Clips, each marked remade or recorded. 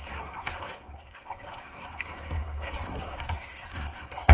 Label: remade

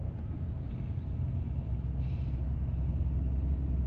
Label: recorded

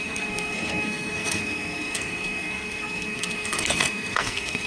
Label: remade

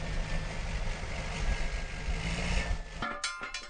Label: recorded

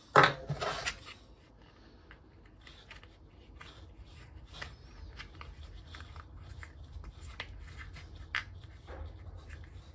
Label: recorded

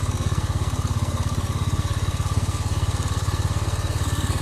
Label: remade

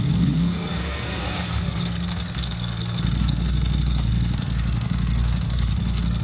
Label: remade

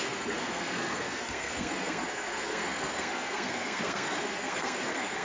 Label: remade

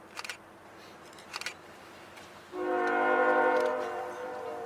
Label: recorded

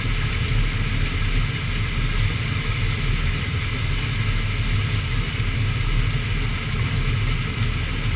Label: recorded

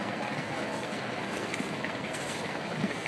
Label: remade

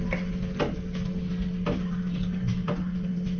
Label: recorded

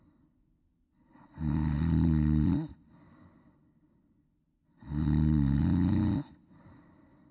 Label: recorded